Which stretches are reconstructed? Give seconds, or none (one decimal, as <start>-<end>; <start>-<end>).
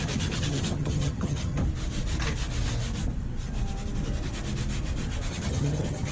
0.0-1.6; 5.3-6.1